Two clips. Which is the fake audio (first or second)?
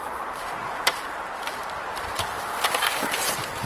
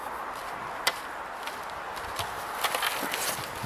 first